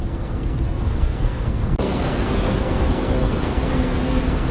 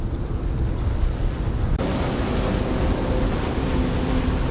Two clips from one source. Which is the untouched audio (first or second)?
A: second